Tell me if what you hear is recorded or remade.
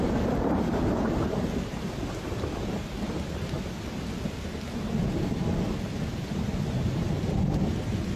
recorded